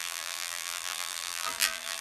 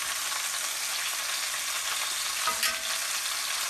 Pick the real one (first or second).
second